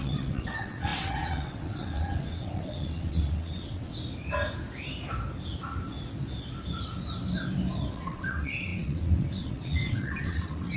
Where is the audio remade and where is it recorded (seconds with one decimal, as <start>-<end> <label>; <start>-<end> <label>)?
0.0-3.9 remade; 3.9-7.9 recorded; 7.9-10.8 remade